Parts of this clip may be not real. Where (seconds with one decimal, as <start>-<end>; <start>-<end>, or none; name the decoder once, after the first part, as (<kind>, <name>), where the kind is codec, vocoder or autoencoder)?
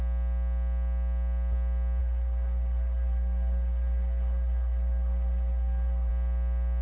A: 2.0-6.1 (codec, SNAC)